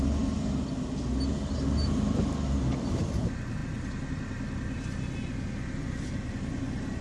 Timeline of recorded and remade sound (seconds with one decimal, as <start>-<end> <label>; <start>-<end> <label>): 0.0-7.0 recorded